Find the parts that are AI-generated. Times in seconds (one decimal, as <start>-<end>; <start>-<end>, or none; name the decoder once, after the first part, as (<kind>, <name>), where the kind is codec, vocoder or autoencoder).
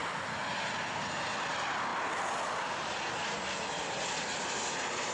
none